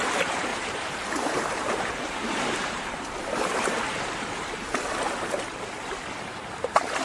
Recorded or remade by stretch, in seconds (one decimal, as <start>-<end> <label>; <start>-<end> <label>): 0.0-0.5 recorded; 0.5-4.0 remade; 4.0-7.0 recorded